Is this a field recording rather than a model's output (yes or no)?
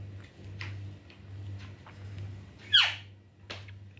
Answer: yes